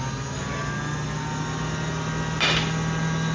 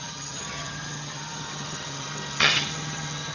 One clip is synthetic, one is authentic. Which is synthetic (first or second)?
second